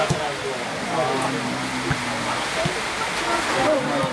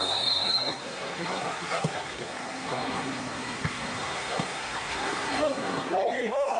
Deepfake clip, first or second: second